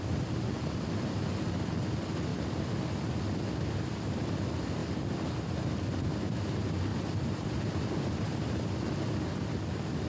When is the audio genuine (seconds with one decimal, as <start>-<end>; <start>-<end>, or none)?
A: 0.0-4.8; 5.4-6.9; 9.1-10.1